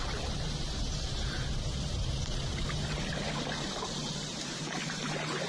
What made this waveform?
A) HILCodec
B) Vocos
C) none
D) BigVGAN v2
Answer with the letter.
C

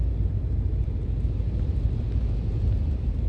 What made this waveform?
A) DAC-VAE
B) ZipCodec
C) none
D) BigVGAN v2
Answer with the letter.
D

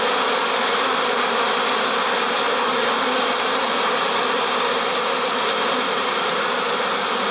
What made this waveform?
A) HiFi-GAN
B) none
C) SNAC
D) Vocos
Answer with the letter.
B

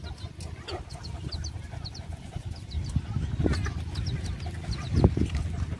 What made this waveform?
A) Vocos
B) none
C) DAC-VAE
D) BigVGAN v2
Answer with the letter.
B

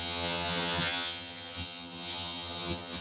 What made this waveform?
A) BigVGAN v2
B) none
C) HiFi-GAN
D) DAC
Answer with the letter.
C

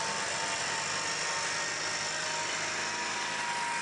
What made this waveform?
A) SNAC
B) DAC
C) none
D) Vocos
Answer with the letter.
C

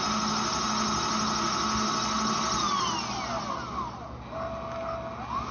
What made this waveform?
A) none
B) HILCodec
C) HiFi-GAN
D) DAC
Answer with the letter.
A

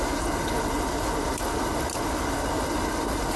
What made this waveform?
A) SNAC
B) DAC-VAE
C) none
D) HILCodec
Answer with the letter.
C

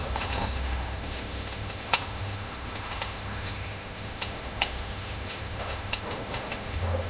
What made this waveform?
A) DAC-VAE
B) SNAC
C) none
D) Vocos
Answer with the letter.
A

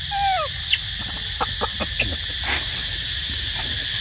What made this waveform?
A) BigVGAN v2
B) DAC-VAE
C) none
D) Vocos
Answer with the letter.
C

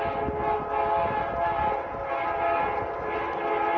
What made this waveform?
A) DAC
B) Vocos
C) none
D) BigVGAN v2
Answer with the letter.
C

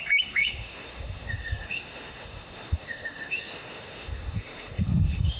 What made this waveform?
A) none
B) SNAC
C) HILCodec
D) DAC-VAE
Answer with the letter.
D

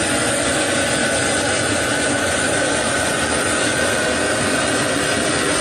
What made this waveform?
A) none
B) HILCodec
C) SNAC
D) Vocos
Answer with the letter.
D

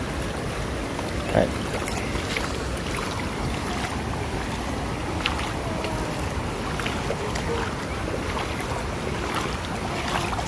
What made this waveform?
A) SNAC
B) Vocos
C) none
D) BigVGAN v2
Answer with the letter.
C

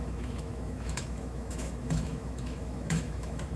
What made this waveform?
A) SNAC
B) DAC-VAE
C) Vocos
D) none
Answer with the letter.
B